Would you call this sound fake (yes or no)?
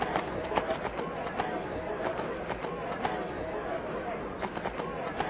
no